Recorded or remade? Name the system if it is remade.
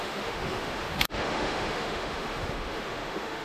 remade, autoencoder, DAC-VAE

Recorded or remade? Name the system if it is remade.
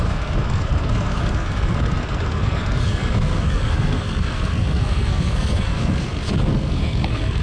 remade, codec, SNAC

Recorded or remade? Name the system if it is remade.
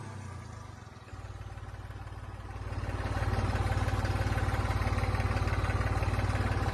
recorded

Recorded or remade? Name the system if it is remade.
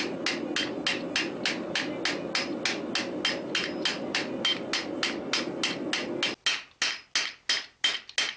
recorded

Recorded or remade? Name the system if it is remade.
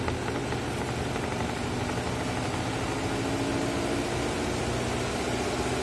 recorded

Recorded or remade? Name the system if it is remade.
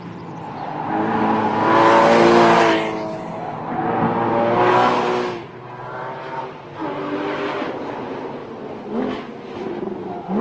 recorded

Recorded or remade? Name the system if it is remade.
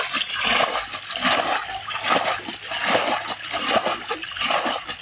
recorded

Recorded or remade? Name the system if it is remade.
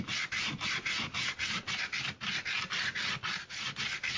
recorded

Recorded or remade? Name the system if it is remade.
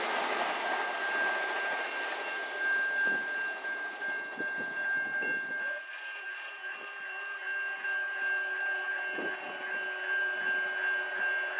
recorded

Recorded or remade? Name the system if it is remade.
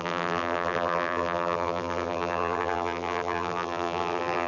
remade, vocoder, BigVGAN v2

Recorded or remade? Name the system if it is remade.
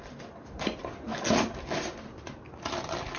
recorded